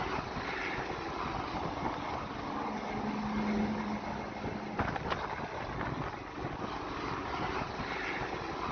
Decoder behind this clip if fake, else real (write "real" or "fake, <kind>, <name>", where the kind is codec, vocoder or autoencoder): real